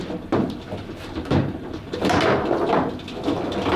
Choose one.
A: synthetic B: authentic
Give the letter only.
B